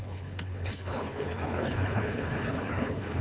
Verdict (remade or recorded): remade